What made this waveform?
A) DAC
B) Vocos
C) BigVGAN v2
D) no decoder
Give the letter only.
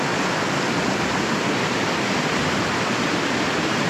D